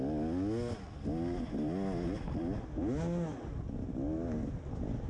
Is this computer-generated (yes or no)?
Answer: no